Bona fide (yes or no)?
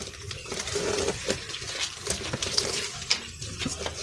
yes